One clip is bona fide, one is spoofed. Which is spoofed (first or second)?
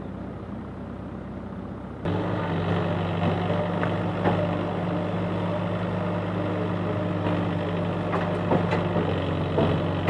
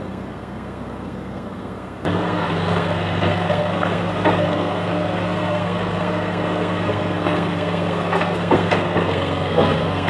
second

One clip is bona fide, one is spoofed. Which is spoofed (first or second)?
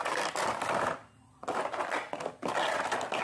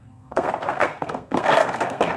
second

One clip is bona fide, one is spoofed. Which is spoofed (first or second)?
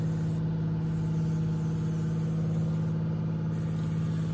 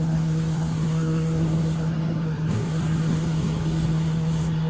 second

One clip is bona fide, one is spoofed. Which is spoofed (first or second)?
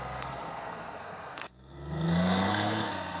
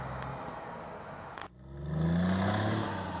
first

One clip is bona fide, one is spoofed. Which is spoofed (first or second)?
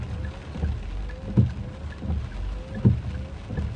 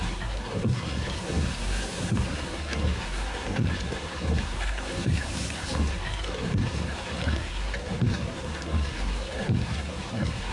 second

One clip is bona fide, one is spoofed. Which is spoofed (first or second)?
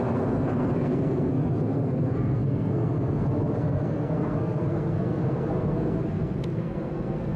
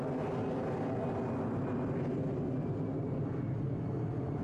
first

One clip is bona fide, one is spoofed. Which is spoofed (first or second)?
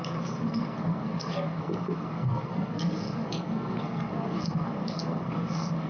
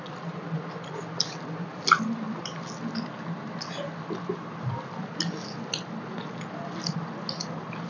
first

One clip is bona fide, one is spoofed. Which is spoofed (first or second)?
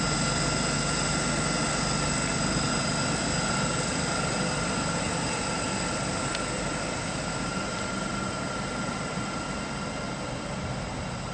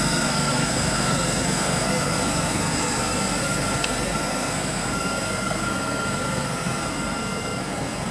second